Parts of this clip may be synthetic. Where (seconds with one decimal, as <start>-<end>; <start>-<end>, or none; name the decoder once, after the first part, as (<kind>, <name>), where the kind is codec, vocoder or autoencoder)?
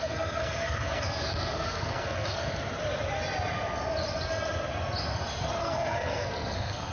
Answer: 0.0-2.4 (codec, SNAC); 5.6-6.9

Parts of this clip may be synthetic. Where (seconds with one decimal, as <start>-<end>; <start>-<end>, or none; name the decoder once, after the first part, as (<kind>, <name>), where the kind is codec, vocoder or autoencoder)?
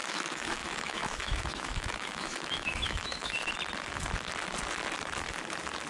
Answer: 0.0-3.5 (autoencoder, DAC-VAE)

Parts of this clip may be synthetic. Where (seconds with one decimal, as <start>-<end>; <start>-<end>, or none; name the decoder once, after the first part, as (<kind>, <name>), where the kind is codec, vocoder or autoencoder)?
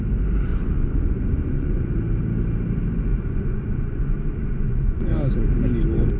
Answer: 0.5-1.9 (vocoder, Vocos); 3.1-5.1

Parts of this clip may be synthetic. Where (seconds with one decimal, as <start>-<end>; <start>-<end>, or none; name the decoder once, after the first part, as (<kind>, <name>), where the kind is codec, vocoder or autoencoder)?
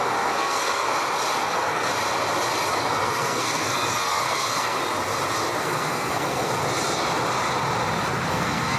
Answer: 0.0-0.9 (codec, SNAC); 1.4-1.9; 2.7-4.8; 5.6-6.6; 8.3-8.8